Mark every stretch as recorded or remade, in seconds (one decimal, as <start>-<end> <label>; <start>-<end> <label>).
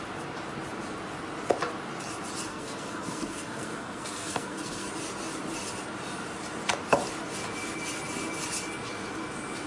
0.0-2.5 recorded; 2.5-4.9 remade; 4.9-9.7 recorded